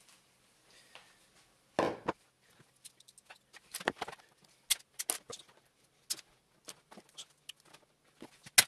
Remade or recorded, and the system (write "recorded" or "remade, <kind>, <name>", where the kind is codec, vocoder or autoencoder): recorded